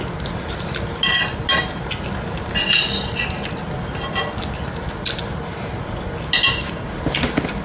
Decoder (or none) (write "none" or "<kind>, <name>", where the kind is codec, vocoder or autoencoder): none